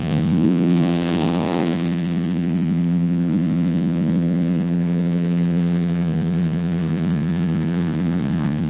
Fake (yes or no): yes